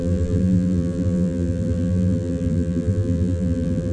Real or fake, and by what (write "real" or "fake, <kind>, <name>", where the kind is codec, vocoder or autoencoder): fake, vocoder, BigVGAN v2